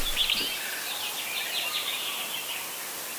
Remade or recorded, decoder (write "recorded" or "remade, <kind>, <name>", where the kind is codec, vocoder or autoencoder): recorded